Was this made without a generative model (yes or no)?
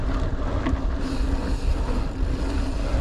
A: yes